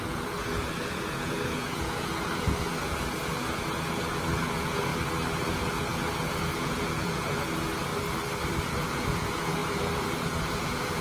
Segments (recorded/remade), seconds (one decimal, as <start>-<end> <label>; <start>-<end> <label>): 0.0-4.9 remade; 4.9-5.5 recorded; 5.5-7.9 remade; 7.9-8.7 recorded; 8.7-11.0 remade